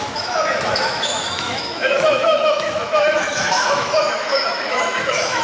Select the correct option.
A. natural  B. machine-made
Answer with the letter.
B